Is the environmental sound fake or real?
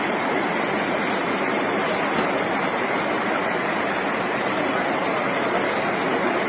real